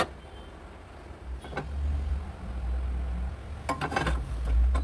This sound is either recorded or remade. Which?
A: recorded